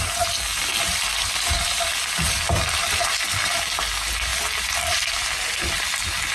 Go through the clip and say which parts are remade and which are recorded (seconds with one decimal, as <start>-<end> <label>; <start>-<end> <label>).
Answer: 0.0-0.5 recorded; 0.5-3.6 remade; 3.6-4.3 recorded; 4.3-5.7 remade; 5.7-6.3 recorded